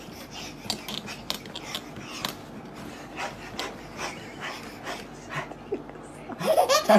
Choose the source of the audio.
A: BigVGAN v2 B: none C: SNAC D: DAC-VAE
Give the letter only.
B